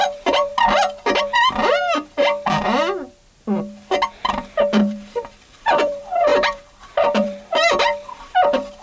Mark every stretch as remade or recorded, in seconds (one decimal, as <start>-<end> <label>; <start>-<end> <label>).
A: 0.0-0.5 remade; 0.5-1.2 recorded; 1.2-1.6 remade; 1.6-4.2 recorded; 4.2-8.8 remade